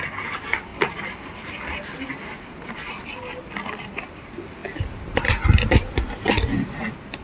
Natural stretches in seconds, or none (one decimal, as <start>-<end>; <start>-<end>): none